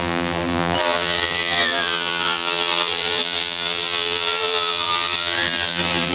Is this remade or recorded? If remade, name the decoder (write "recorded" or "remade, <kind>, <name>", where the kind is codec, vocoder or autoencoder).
remade, vocoder, BigVGAN v2